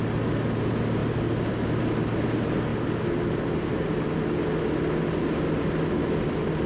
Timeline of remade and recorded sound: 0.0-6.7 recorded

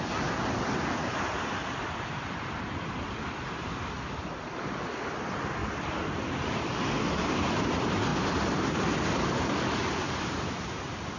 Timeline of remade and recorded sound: 0.0-11.2 recorded